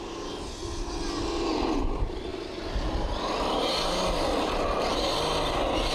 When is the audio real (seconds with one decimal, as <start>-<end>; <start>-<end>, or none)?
0.0-5.9